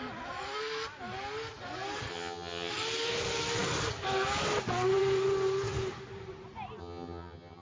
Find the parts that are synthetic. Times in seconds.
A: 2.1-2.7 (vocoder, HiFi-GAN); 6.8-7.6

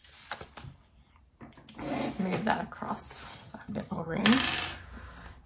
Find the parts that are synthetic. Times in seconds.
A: 3.3-4.2 (vocoder, HiFi-GAN)